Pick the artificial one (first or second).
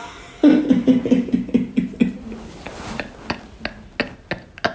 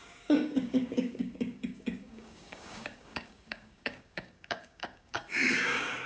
second